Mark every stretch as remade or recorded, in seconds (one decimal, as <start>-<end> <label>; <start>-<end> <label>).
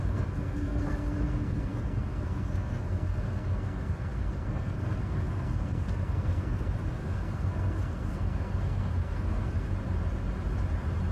0.0-9.7 remade; 9.7-11.1 recorded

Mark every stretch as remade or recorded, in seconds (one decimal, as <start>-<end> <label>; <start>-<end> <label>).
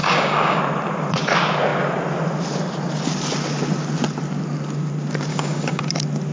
0.0-0.6 remade; 0.6-5.3 recorded; 5.3-5.8 remade; 5.8-6.3 recorded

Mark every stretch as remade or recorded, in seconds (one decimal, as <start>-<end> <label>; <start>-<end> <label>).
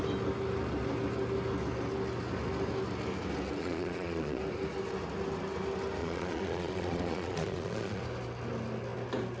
0.0-3.6 recorded; 3.6-4.4 remade; 4.4-6.0 recorded; 6.0-8.0 remade; 8.0-9.4 recorded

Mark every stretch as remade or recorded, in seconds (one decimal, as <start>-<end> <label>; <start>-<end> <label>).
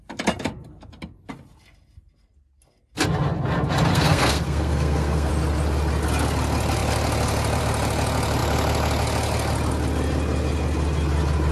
0.0-3.9 recorded; 3.9-5.3 remade; 5.3-11.5 recorded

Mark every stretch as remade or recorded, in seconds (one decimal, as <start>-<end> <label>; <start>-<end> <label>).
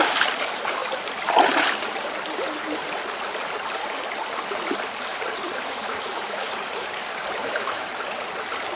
0.0-5.8 recorded; 5.8-6.5 remade; 6.5-7.4 recorded; 7.4-7.9 remade; 7.9-8.8 recorded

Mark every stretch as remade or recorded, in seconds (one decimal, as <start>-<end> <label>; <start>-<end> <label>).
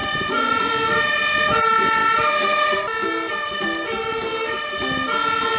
0.0-0.7 remade; 0.7-5.6 recorded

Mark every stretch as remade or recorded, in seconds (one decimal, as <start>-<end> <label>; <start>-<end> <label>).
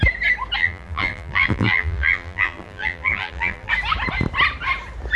0.0-0.6 recorded; 0.6-3.7 remade; 3.7-5.2 recorded